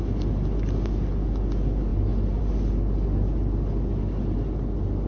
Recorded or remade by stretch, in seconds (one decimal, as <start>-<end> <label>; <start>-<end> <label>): 0.0-5.1 recorded